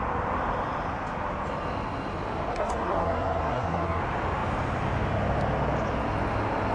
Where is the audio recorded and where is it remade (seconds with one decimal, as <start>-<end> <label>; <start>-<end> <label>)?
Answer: 0.0-2.5 recorded; 2.5-4.0 remade; 4.0-6.7 recorded